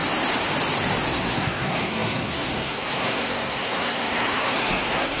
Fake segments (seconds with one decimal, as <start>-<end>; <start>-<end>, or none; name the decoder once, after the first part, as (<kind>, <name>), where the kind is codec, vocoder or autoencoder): 1.1-5.2 (codec, SNAC)